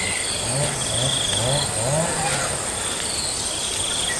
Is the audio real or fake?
real